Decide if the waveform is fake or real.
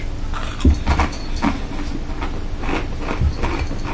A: real